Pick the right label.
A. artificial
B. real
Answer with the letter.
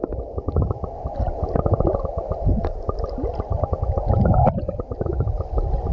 B